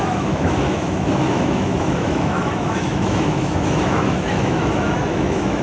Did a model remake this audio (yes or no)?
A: yes